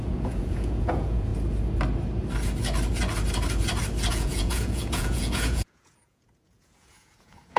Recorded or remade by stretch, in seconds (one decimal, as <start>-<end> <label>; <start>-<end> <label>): 0.0-1.3 remade; 1.3-4.1 recorded; 4.1-7.6 remade